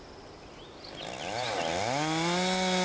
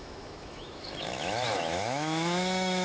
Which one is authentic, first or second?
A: first